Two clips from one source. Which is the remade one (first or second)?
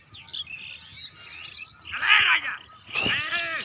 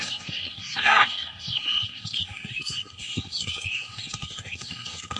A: second